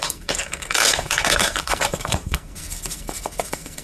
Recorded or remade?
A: remade